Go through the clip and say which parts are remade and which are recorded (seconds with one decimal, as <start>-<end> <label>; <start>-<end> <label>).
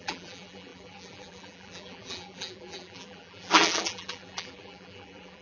0.0-5.4 remade